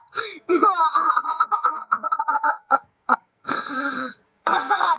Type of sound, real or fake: fake